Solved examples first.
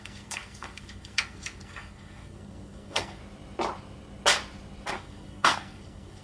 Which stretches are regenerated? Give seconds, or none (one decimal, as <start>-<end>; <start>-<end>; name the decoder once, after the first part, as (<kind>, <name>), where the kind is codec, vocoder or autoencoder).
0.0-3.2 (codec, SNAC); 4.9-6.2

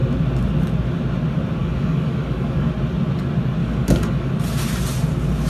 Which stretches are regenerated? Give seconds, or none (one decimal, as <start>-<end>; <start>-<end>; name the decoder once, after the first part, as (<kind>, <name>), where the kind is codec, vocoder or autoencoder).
1.6-2.7 (codec, DAC); 3.6-4.3

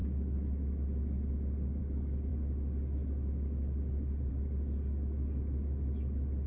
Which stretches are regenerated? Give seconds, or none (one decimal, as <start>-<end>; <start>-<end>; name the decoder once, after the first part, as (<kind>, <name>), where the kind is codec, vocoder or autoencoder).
none

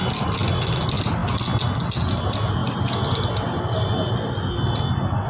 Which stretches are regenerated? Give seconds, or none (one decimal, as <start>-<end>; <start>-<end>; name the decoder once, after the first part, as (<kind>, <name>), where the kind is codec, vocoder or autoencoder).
none

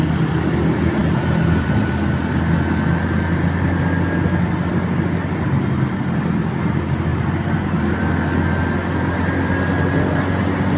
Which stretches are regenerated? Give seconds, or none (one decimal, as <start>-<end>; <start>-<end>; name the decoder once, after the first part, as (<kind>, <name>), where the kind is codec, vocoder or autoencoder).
7.1-8.0 (vocoder, BigVGAN v2)